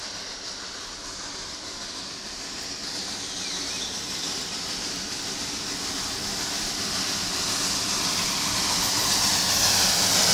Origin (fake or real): real